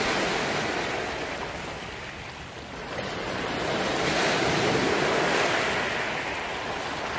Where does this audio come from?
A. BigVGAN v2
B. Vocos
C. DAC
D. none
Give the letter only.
D